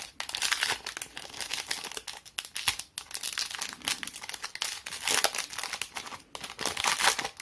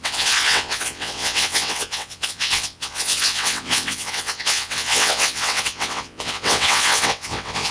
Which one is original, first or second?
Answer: first